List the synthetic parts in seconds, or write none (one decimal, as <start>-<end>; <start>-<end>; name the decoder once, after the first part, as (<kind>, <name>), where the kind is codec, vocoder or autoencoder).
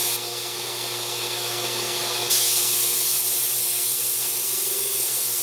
0.0-3.2 (codec, SNAC); 3.6-5.4